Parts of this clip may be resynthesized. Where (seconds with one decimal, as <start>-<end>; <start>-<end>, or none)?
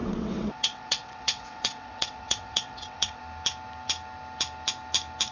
0.0-3.2